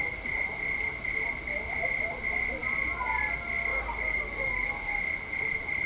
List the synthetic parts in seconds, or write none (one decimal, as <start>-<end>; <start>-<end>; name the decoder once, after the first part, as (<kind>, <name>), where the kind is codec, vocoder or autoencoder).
3.7-5.0 (codec, DAC)